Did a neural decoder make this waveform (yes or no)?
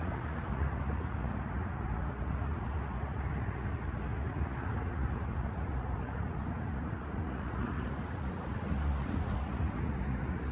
yes